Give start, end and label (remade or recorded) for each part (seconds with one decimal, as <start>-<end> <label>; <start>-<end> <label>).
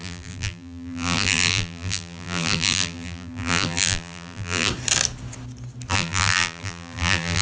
0.0-4.7 remade; 4.7-5.9 recorded; 5.9-7.4 remade